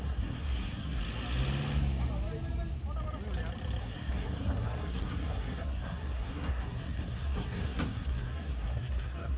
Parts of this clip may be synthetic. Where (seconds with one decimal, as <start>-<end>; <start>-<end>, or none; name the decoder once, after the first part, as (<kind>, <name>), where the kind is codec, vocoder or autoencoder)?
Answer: 0.0-1.0 (codec, SNAC); 3.8-9.4